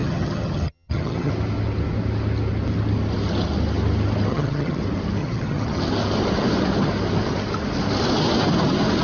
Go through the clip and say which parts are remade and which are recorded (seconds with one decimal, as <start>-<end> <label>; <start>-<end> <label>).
0.0-1.3 remade; 1.3-4.3 recorded; 4.3-4.8 remade; 4.8-5.2 recorded; 5.2-5.8 remade; 5.8-9.0 recorded

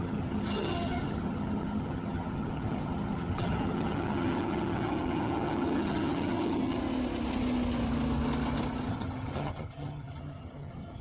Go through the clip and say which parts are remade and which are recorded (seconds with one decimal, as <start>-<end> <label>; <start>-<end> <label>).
0.0-6.8 remade; 6.8-8.9 recorded; 8.9-11.0 remade

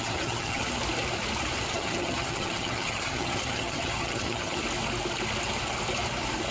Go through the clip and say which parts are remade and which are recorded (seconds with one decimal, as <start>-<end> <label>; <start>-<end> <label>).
0.0-0.6 remade; 0.6-1.7 recorded; 1.7-4.6 remade; 4.6-6.5 recorded

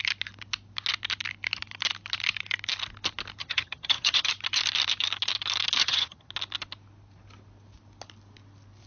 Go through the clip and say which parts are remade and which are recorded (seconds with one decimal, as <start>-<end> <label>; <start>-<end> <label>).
0.0-3.4 recorded; 3.4-4.3 remade; 4.3-5.8 recorded; 5.8-6.3 remade; 6.3-8.9 recorded